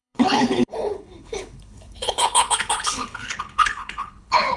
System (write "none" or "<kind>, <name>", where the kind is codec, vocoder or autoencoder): codec, HILCodec